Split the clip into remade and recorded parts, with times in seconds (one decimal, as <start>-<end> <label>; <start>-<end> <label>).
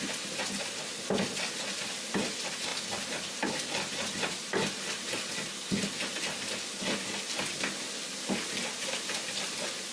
0.0-9.9 recorded